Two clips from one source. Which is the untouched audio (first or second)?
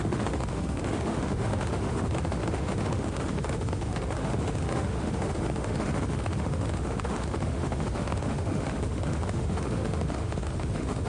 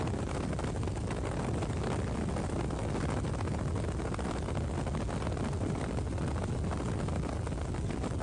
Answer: second